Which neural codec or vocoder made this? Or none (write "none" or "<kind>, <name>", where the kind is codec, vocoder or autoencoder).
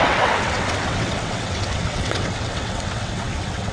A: vocoder, WaveNeXt